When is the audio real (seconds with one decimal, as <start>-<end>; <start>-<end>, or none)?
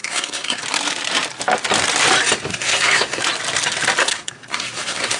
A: 0.6-2.5; 3.2-4.0